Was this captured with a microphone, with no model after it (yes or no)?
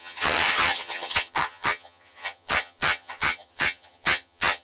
no